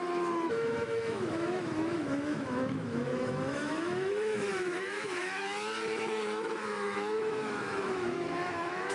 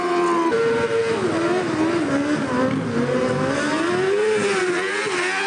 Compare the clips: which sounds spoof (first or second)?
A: first